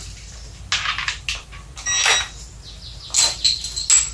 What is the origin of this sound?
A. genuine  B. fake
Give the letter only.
A